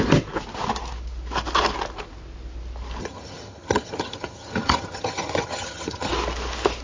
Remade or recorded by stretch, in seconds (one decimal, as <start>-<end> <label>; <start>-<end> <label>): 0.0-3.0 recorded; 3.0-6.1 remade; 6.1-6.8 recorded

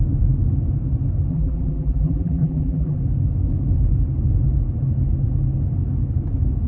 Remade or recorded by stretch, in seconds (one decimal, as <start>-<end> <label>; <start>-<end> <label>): 0.0-1.3 recorded; 1.3-3.0 remade; 3.0-6.7 recorded

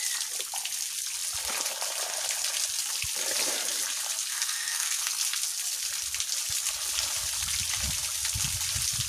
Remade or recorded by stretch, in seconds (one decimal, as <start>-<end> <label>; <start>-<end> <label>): 0.0-4.3 recorded; 4.3-5.2 remade; 5.2-9.1 recorded

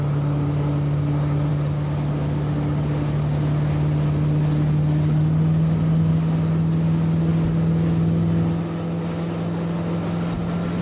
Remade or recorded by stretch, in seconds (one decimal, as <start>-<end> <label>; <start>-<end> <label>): 0.0-10.8 recorded